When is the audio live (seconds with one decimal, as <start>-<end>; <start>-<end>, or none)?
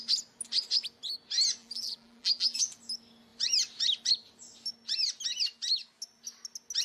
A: 0.0-1.6; 2.6-6.8